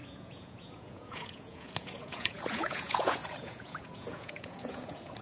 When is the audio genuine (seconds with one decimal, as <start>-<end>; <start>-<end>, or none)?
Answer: none